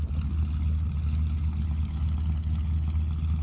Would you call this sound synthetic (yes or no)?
no